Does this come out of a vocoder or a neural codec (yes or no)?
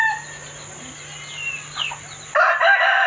no